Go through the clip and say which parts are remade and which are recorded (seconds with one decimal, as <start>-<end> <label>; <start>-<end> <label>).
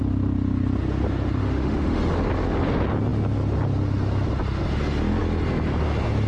0.0-1.4 recorded; 1.4-2.0 remade; 2.0-6.3 recorded